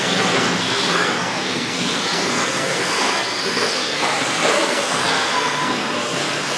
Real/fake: fake